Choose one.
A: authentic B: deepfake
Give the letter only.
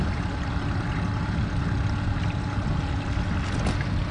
A